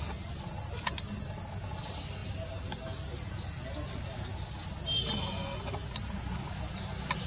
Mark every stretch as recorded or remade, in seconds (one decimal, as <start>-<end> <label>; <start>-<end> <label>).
0.0-7.3 recorded